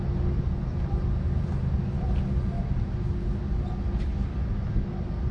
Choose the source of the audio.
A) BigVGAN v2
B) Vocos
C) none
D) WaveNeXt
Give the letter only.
C